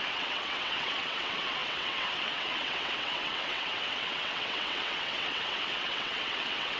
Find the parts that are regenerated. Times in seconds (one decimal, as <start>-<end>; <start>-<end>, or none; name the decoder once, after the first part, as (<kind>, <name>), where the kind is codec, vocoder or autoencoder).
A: 0.0-6.8 (vocoder, WaveNeXt)